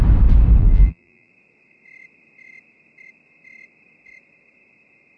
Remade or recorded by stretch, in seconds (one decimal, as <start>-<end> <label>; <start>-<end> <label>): 0.0-0.6 recorded; 0.6-1.3 remade; 1.3-5.2 recorded